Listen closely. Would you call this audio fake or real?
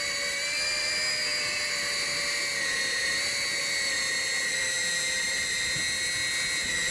fake